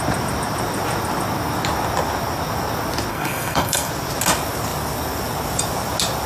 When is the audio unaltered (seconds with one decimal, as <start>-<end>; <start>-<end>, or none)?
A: 0.0-3.1; 3.9-6.3